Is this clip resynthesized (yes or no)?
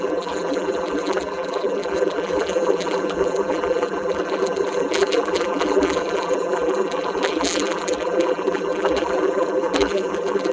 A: yes